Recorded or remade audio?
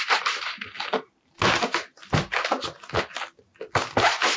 recorded